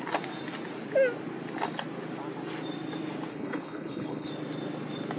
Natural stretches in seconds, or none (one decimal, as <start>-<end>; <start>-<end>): 0.0-3.3; 4.3-5.2